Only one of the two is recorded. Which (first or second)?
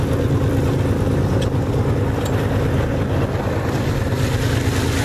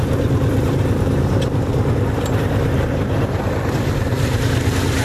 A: first